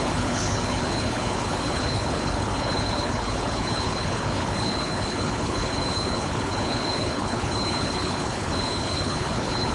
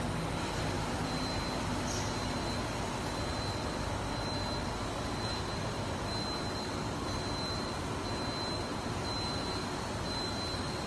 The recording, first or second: second